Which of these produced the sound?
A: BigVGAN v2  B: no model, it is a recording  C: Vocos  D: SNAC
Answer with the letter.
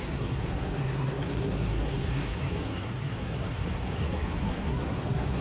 D